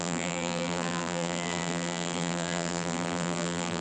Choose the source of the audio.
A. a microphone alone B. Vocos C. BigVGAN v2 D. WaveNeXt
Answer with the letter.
C